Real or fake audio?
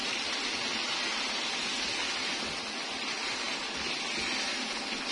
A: real